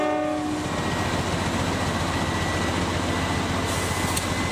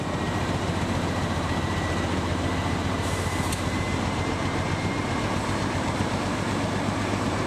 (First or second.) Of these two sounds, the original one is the first